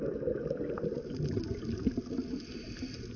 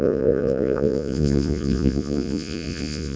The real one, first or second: first